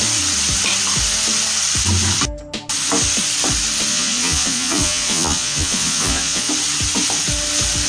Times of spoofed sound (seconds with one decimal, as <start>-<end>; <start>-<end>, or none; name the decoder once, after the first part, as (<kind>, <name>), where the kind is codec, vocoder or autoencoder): 3.9-6.5 (vocoder, Vocos)